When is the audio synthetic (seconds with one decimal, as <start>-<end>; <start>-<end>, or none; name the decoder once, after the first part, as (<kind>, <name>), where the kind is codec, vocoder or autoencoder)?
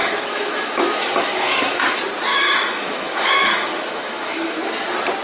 0.0-1.8 (autoencoder, DAC-VAE); 2.3-4.6